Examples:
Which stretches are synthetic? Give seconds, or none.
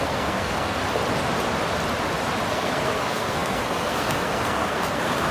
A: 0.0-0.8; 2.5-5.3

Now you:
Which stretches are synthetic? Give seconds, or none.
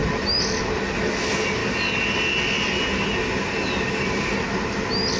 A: none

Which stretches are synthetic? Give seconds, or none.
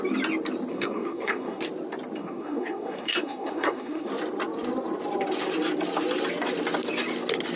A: 0.7-1.6; 2.2-4.1